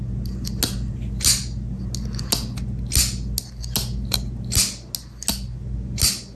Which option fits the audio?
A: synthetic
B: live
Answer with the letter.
B